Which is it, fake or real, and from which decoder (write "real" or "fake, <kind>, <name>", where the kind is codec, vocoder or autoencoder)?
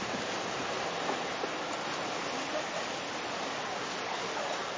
real